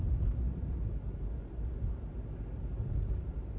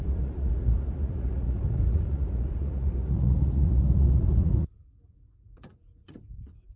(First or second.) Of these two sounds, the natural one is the first